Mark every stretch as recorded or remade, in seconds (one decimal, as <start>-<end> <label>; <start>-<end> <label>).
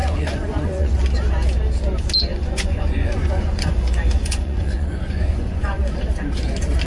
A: 0.0-1.0 remade; 1.0-2.3 recorded; 2.3-5.8 remade; 5.8-6.9 recorded